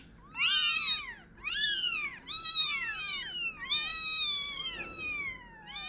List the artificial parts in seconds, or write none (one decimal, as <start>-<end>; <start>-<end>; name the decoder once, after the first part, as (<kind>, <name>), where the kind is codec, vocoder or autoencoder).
none